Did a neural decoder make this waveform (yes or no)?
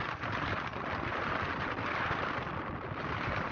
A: no